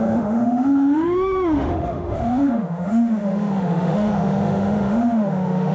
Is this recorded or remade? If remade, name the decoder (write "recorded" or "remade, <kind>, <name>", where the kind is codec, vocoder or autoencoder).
remade, autoencoder, DAC-VAE